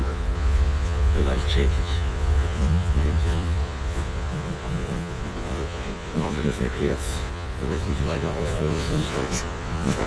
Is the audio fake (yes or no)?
yes